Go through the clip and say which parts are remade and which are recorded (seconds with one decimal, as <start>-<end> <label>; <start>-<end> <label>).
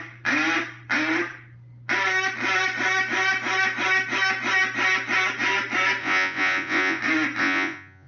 0.0-6.0 recorded; 6.0-7.0 remade; 7.0-7.4 recorded; 7.4-8.1 remade